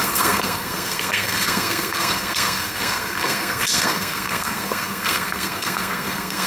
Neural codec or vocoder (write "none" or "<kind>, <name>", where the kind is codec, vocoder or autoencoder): codec, SNAC